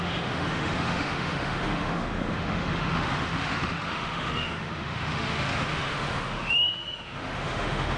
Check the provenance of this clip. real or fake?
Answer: fake